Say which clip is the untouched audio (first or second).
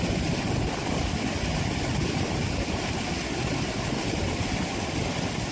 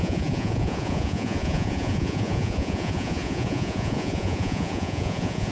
first